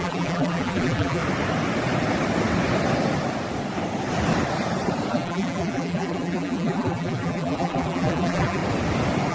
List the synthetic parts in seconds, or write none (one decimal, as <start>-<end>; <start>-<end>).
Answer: 0.0-1.2; 5.1-8.6